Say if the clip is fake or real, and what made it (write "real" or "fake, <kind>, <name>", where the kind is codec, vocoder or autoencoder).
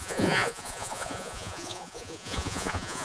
fake, vocoder, Vocos